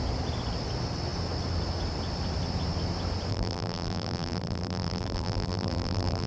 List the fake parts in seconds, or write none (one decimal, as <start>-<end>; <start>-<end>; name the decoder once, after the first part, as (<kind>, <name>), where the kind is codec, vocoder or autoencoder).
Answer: 3.3-6.3 (vocoder, BigVGAN v2)